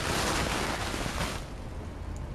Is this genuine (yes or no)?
yes